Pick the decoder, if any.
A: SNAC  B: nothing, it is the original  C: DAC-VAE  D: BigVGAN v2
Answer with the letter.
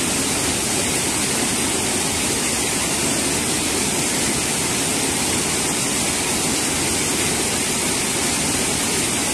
B